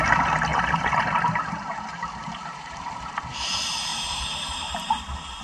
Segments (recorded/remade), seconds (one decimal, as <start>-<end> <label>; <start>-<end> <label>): 0.0-0.5 remade; 0.5-1.4 recorded; 1.4-3.9 remade; 3.9-4.6 recorded; 4.6-5.4 remade